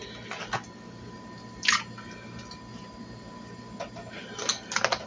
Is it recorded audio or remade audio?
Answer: recorded